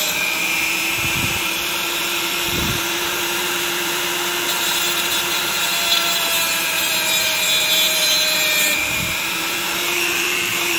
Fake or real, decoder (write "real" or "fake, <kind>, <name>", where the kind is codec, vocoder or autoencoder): fake, vocoder, BigVGAN v2